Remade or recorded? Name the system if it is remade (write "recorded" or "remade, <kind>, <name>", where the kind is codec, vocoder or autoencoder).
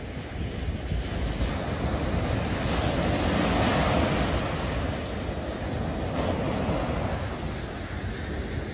recorded